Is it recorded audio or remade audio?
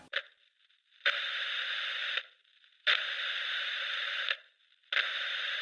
remade